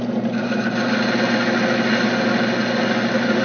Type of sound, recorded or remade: recorded